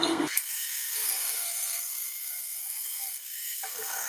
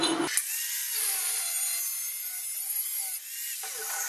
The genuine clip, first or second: second